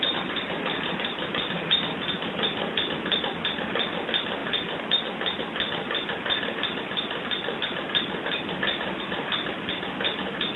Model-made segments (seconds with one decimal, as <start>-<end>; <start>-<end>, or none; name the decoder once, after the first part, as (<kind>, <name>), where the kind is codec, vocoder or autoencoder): none